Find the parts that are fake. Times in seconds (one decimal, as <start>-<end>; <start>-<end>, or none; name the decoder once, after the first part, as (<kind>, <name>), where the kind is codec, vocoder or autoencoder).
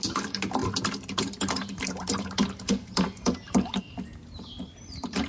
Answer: 0.6-3.8 (vocoder, BigVGAN v2)